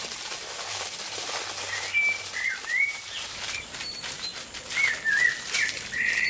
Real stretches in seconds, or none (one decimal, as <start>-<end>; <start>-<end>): 1.4-2.2; 4.3-5.5